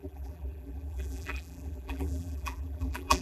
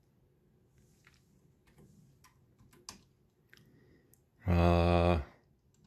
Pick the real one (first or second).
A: second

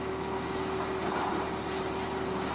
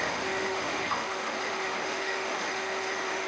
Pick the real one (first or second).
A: first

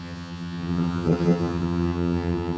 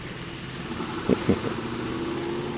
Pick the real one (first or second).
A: second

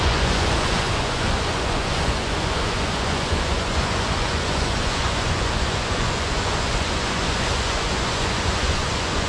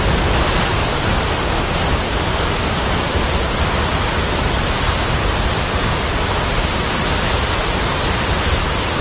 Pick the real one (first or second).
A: second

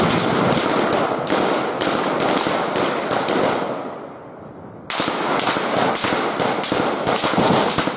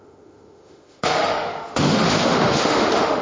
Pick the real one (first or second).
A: first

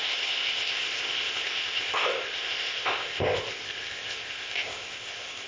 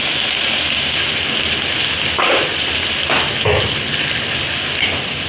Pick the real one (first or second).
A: second